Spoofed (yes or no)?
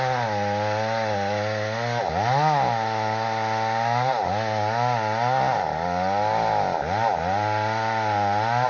no